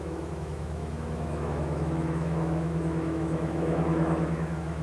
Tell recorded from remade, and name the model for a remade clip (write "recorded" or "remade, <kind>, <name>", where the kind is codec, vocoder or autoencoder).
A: remade, autoencoder, DAC-VAE